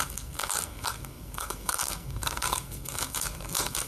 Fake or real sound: fake